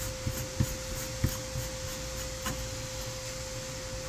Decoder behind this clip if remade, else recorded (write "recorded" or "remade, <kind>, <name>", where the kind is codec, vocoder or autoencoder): recorded